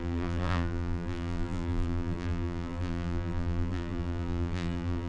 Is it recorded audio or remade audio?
remade